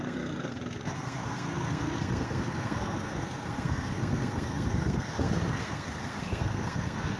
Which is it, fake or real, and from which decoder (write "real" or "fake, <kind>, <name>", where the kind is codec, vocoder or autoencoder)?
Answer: fake, codec, SNAC